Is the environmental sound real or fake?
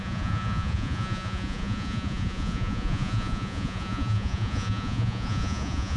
fake